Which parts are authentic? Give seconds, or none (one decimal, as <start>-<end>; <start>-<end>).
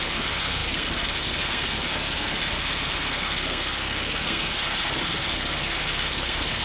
none